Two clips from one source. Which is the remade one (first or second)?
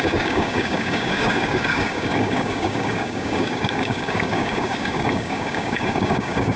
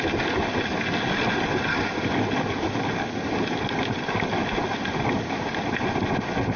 first